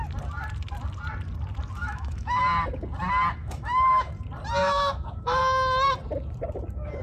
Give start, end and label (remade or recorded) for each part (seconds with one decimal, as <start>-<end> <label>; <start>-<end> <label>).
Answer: 0.0-1.8 recorded; 1.8-2.4 remade; 2.4-3.4 recorded; 3.4-4.1 remade; 4.1-4.6 recorded; 4.6-5.4 remade; 5.4-7.0 recorded